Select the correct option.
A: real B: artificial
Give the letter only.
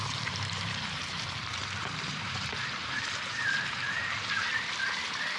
B